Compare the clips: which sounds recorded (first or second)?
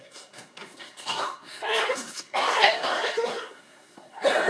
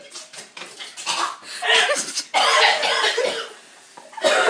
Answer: second